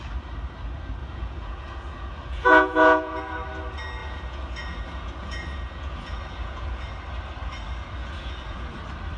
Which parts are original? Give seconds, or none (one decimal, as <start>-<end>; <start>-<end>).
0.0-1.0; 3.2-4.0; 6.9-8.0; 8.7-9.2